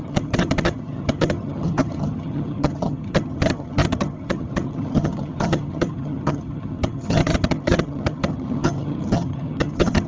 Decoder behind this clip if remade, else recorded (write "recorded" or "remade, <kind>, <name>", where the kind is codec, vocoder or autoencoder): remade, vocoder, HiFi-GAN